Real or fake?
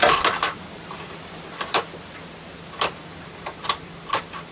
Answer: real